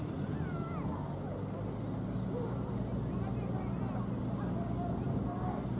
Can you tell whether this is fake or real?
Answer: real